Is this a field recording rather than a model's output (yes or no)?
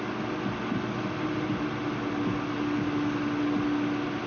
yes